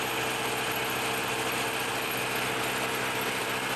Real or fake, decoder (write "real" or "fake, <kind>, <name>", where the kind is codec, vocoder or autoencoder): real